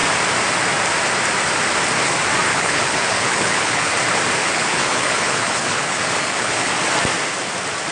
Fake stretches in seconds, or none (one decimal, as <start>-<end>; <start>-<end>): 2.5-3.9; 4.4-6.7